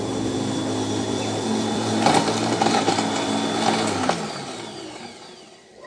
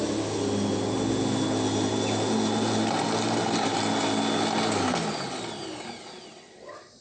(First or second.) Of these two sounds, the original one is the second